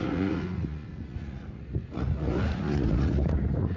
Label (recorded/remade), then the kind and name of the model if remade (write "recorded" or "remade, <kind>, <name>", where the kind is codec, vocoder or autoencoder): remade, vocoder, Vocos